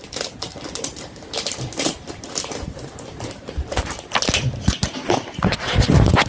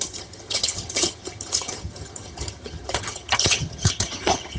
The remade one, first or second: second